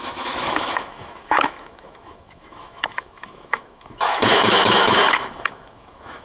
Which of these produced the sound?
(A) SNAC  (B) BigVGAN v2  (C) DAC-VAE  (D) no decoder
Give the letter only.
C